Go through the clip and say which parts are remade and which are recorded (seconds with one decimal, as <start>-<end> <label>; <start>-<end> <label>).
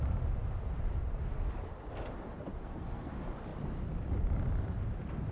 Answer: 0.0-2.6 recorded; 2.6-3.1 remade; 3.1-5.3 recorded